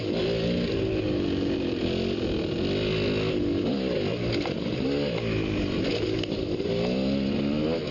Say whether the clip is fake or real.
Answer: real